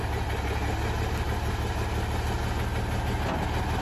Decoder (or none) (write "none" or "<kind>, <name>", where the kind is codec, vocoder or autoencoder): none